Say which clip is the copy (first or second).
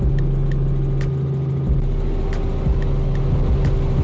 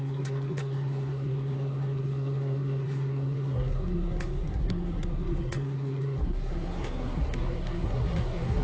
second